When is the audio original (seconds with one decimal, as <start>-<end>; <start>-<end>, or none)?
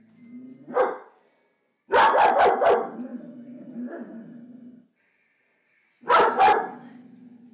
0.0-7.5